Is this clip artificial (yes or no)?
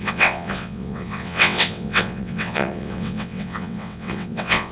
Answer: yes